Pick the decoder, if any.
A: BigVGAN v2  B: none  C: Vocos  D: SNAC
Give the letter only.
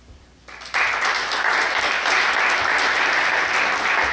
B